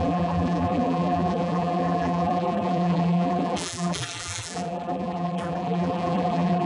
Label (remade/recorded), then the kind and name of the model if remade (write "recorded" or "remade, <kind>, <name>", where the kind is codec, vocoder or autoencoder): remade, vocoder, BigVGAN v2